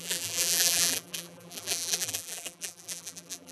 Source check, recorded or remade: remade